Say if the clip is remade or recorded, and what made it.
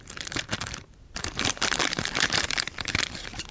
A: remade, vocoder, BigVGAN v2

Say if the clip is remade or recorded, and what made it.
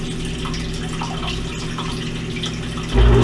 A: recorded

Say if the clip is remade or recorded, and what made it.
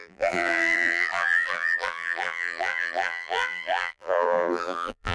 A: remade, vocoder, BigVGAN v2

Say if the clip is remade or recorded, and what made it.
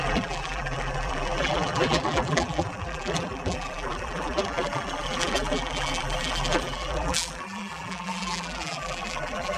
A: remade, vocoder, BigVGAN v2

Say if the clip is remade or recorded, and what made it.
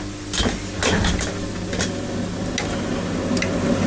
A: recorded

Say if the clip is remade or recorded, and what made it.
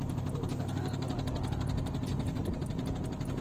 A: remade, vocoder, BigVGAN v2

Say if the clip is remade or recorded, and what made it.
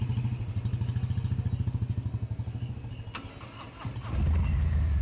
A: recorded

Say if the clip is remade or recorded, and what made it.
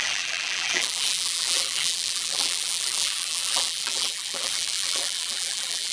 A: remade, vocoder, BigVGAN v2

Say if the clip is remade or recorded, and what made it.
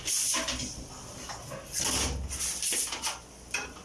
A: recorded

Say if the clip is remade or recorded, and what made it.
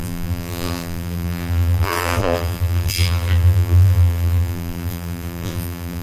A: remade, vocoder, BigVGAN v2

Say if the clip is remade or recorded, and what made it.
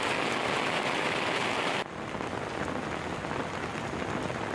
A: recorded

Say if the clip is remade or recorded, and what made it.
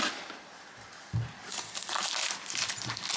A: remade, vocoder, BigVGAN v2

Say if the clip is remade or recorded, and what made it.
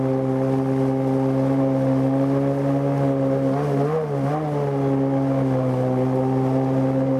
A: recorded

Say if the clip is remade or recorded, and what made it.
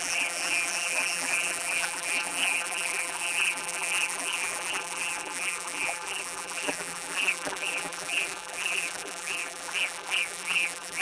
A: remade, vocoder, BigVGAN v2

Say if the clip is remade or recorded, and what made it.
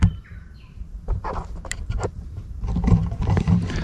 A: remade, vocoder, BigVGAN v2